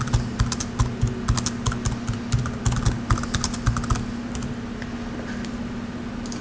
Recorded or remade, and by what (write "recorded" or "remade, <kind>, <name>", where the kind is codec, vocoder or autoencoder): recorded